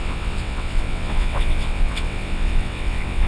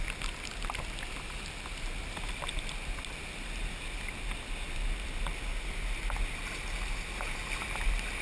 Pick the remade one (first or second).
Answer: first